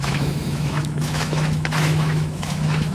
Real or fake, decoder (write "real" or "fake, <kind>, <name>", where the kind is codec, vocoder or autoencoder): fake, autoencoder, DAC-VAE